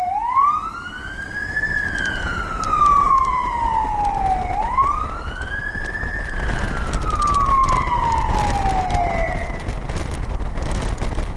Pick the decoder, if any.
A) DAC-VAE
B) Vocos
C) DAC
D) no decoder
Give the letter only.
D